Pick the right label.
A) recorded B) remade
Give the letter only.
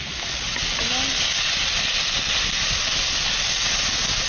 A